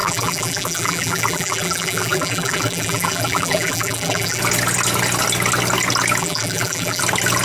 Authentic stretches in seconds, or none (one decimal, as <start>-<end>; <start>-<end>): 4.4-6.2; 7.0-7.4